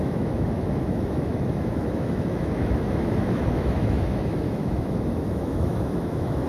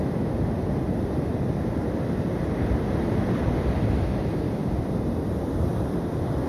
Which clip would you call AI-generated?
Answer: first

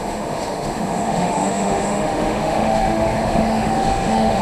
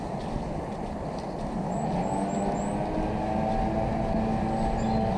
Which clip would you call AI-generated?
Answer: first